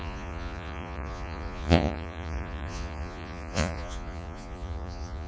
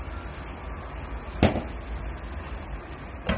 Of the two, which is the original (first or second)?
second